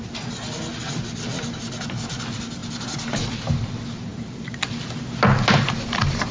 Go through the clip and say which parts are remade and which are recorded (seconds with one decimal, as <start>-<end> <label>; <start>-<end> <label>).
0.0-1.3 recorded; 1.3-2.2 remade; 2.2-2.6 recorded; 2.6-3.4 remade; 3.4-4.1 recorded; 4.1-5.0 remade; 5.0-6.3 recorded